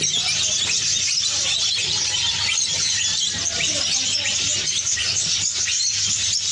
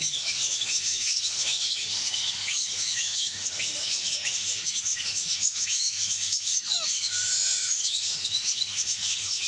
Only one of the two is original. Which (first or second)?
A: first